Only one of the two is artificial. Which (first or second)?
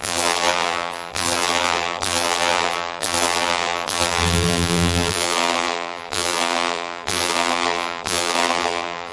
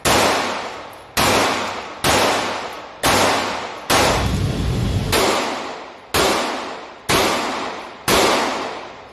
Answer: first